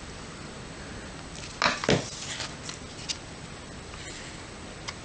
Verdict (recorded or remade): recorded